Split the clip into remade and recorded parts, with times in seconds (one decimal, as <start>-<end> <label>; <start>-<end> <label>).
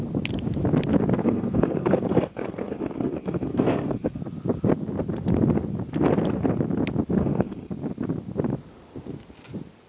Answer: 0.0-1.2 recorded; 1.2-4.2 remade; 4.2-7.2 recorded; 7.2-7.7 remade; 7.7-9.9 recorded